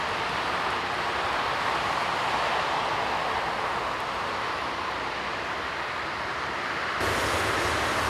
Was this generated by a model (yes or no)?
no